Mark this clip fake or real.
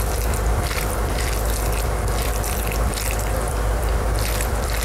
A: fake